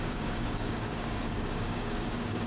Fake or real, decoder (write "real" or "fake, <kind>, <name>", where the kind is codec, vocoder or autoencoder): fake, codec, DAC